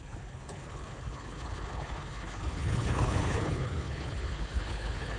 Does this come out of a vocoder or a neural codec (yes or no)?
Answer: yes